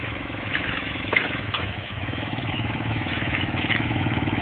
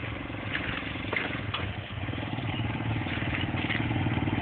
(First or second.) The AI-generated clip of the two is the first